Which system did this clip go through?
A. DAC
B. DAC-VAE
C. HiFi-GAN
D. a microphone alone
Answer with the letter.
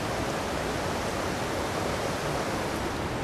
D